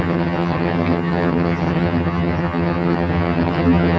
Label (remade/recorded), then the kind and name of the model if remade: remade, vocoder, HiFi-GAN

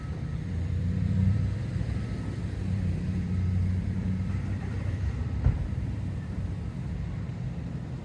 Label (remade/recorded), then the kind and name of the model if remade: remade, vocoder, BigVGAN v2